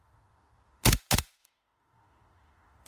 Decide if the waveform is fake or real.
fake